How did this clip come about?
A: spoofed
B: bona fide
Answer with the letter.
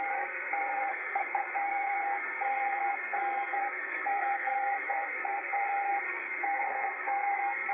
A